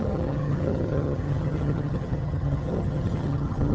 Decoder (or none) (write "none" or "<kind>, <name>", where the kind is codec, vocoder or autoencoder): vocoder, HiFi-GAN